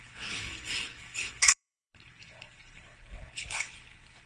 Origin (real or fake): fake